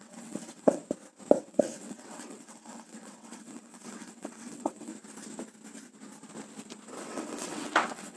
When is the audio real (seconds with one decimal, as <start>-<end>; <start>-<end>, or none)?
0.8-1.4; 4.9-7.0